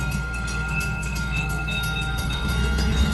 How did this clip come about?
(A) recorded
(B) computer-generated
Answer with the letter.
B